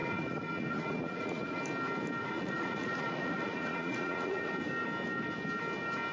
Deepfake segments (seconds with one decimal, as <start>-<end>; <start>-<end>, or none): 0.0-1.6; 2.2-4.5